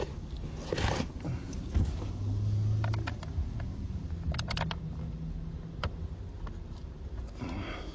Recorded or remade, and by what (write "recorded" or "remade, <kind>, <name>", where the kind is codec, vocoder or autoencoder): recorded